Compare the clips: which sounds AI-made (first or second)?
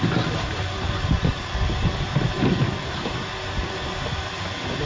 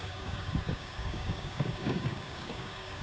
second